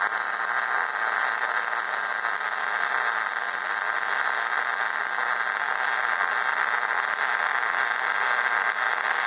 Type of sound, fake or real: real